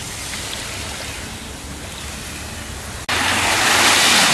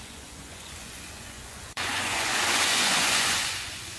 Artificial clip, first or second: second